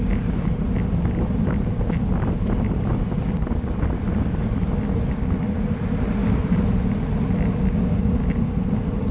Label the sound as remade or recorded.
recorded